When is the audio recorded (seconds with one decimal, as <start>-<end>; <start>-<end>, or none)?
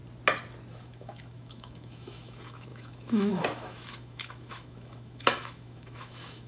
0.0-0.7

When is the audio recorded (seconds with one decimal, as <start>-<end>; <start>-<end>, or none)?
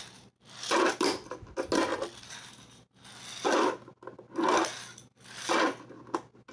0.0-6.5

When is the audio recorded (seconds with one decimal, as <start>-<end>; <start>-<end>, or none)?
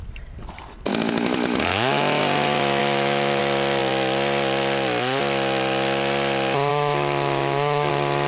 0.0-0.9; 2.2-2.8; 3.4-6.7; 7.9-8.3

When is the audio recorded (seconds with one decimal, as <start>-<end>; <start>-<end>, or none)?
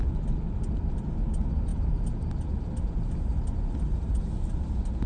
0.0-5.1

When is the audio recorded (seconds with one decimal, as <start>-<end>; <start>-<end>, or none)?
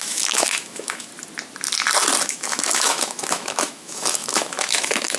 1.1-2.2